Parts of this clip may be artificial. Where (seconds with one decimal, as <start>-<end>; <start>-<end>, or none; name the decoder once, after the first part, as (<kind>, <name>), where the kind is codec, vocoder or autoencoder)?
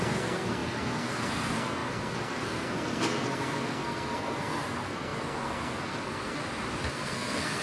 0.0-6.4 (codec, SNAC); 6.9-7.6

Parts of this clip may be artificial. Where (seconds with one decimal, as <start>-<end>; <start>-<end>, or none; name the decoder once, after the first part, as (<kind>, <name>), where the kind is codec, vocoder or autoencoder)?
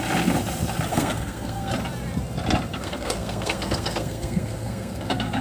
0.9-1.7 (codec, SNAC); 2.7-5.4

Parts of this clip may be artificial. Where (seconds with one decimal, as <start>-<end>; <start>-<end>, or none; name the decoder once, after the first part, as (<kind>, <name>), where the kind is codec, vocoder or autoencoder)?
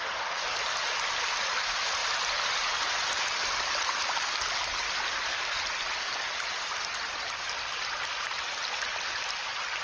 none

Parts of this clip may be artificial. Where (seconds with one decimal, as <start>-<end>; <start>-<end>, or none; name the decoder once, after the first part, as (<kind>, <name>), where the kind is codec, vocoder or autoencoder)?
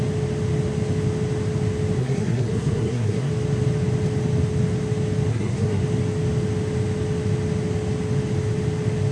2.0-3.3 (codec, SNAC); 5.3-5.8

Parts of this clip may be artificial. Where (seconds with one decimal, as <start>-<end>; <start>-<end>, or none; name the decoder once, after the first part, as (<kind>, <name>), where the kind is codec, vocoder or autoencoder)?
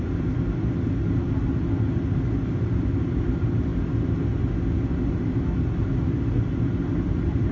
none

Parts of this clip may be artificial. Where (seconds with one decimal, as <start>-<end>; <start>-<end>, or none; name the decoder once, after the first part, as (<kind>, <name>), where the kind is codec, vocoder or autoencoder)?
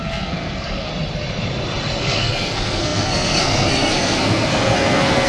0.0-0.9 (codec, SNAC); 2.0-5.3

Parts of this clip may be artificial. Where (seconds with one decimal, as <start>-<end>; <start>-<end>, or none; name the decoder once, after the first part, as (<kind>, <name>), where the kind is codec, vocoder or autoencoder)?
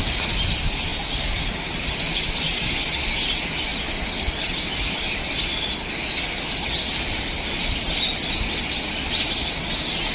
none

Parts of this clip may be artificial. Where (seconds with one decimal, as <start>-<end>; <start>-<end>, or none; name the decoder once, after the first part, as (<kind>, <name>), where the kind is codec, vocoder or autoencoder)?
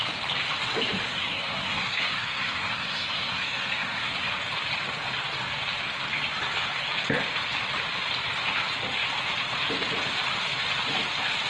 1.1-4.3 (codec, SNAC)